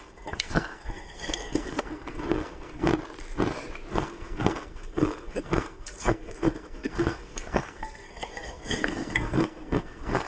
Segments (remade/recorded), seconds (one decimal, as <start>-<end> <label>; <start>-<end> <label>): 0.0-2.9 remade; 2.9-3.9 recorded; 3.9-10.3 remade